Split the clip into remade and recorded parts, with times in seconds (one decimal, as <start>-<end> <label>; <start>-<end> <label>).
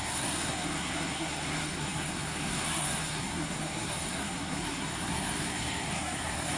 0.0-6.6 remade